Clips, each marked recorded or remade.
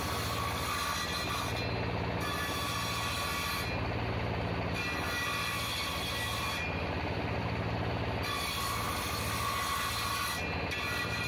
recorded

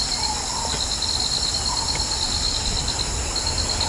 recorded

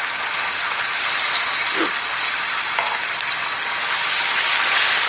recorded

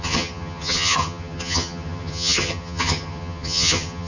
remade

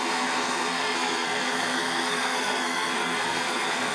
remade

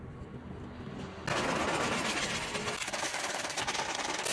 recorded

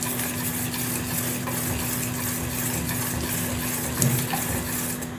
recorded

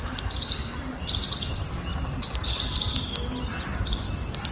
recorded